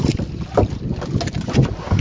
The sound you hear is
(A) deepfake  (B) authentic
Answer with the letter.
B